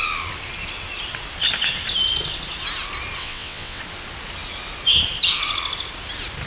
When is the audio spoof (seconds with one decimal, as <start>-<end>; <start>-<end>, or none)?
3.2-3.8